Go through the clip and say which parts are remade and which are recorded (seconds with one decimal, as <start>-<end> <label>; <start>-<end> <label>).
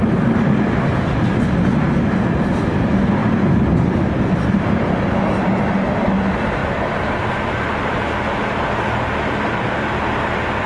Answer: 0.0-6.6 recorded; 6.6-7.3 remade; 7.3-10.7 recorded